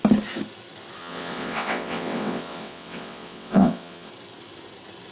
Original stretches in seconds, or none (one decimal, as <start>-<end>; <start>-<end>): 0.0-1.0; 4.1-5.1